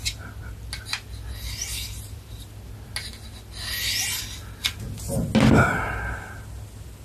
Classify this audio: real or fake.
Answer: real